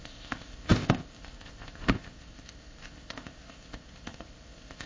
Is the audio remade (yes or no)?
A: yes